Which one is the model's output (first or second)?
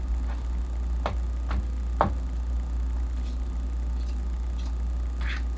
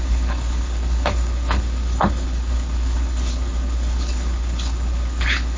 second